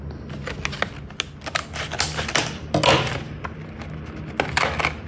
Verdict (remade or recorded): recorded